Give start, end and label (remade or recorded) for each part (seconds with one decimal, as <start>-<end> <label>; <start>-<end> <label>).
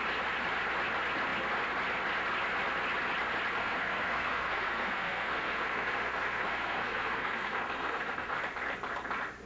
0.0-3.6 recorded; 3.6-8.4 remade; 8.4-9.5 recorded